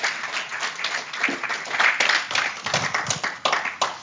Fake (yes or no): no